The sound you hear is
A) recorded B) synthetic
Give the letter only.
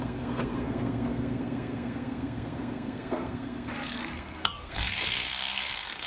B